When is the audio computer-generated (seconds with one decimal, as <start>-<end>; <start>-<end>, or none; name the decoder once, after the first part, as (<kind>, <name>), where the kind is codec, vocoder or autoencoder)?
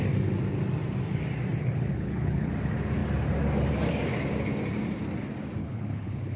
1.6-2.5 (codec, HILCodec); 5.6-6.4